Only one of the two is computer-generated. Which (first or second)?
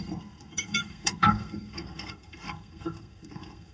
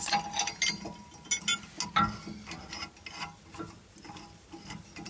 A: first